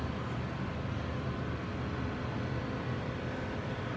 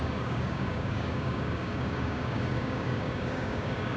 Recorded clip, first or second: first